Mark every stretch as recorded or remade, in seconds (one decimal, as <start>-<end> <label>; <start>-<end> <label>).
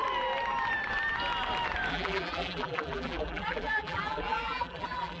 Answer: 0.0-1.9 recorded; 1.9-5.2 remade